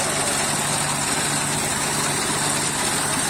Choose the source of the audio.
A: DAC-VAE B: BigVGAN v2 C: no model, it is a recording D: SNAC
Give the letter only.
C